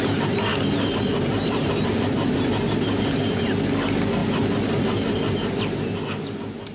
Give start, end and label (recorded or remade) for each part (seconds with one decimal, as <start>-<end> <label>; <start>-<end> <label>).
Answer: 0.0-0.5 recorded; 0.5-3.4 remade; 3.4-4.2 recorded; 4.2-5.8 remade; 5.8-6.7 recorded